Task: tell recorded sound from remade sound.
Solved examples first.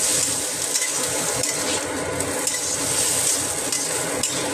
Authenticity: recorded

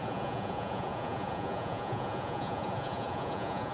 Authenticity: remade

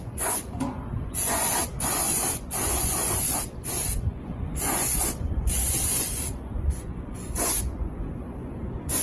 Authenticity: remade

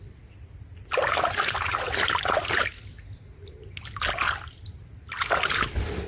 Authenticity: recorded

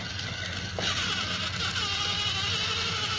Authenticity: recorded